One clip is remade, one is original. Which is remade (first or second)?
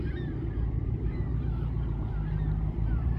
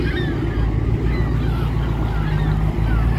first